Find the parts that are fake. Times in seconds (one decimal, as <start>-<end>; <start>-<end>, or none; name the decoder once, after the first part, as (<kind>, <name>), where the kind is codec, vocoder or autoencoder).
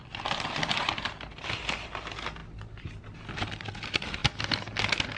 1.3-4.2 (vocoder, BigVGAN v2)